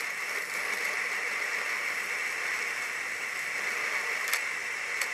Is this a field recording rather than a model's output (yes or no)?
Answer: yes